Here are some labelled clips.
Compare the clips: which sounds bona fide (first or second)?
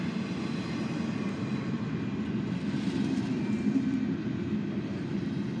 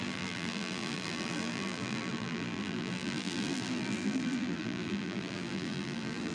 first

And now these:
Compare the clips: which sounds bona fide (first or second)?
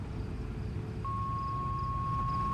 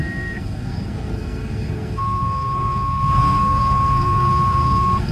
first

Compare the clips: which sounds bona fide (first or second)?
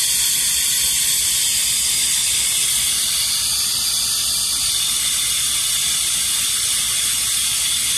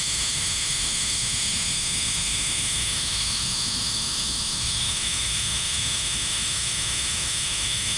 first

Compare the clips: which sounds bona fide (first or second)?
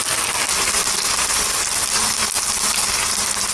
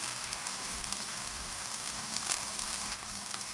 first